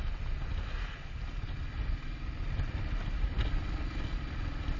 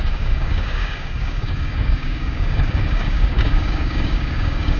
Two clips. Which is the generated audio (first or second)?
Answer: second